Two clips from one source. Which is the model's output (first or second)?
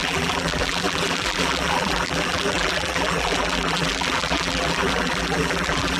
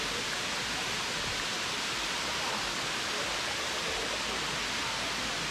first